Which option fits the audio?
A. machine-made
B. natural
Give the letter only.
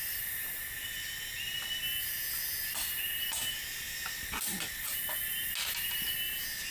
B